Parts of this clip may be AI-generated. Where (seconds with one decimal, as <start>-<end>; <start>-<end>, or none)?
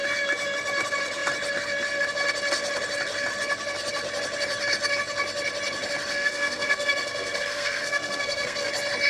6.1-8.7